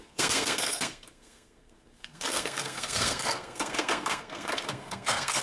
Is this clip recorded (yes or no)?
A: no